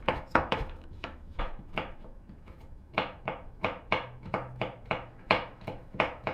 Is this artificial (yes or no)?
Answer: yes